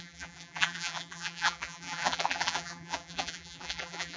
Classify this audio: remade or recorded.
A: remade